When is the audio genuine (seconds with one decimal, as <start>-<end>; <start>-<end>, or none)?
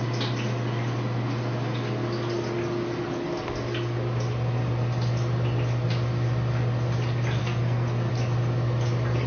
0.0-7.4; 8.1-9.3